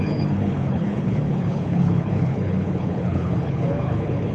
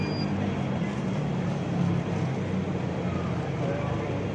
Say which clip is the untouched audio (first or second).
second